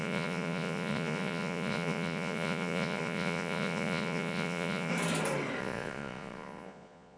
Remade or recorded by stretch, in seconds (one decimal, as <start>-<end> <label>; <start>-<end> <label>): 0.0-4.9 remade; 4.9-5.6 recorded; 5.6-7.2 remade